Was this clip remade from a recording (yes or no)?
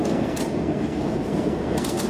yes